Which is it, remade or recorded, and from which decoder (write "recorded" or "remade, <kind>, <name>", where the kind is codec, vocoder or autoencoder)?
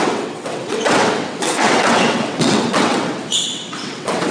remade, vocoder, WaveNeXt